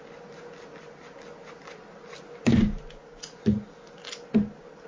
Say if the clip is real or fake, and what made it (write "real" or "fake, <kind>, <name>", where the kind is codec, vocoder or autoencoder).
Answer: real